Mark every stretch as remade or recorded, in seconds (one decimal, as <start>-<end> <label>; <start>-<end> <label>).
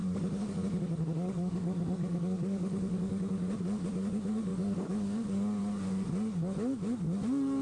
0.0-3.2 remade; 3.2-4.5 recorded; 4.5-5.6 remade; 5.6-7.6 recorded